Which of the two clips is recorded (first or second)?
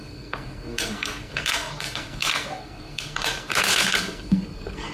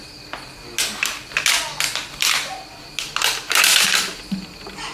second